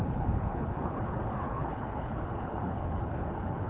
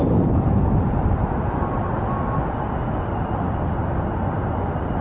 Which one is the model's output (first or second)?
first